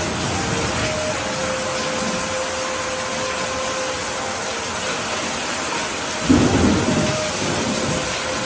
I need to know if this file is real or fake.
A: real